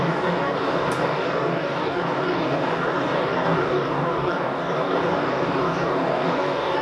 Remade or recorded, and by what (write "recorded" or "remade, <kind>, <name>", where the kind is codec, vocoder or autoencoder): remade, codec, DAC